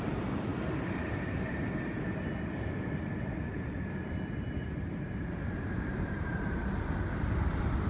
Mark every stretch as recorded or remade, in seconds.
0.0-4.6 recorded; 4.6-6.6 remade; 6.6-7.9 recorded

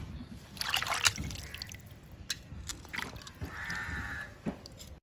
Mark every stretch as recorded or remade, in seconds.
0.0-5.0 recorded

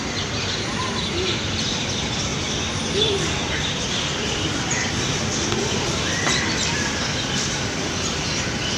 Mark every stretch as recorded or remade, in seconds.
0.0-2.3 remade; 2.3-3.9 recorded; 3.9-8.8 remade

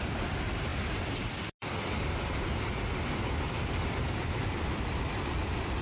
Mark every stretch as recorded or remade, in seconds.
0.0-0.7 remade; 0.7-4.2 recorded; 4.2-5.8 remade

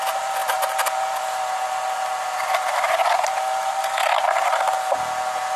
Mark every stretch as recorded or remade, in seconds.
0.0-0.4 recorded; 0.4-3.8 remade; 3.8-5.6 recorded